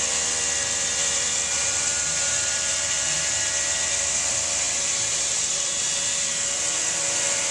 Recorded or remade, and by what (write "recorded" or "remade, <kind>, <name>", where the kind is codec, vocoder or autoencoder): remade, vocoder, BigVGAN v2